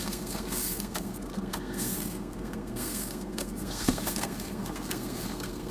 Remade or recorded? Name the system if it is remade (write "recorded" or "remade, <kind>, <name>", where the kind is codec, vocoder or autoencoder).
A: remade, codec, SNAC